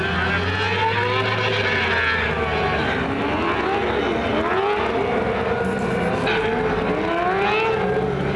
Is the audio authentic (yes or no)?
yes